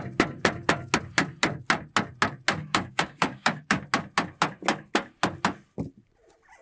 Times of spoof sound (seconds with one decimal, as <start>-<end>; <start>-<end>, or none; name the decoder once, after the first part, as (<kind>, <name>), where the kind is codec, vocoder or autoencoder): 2.6-3.8 (codec, DAC)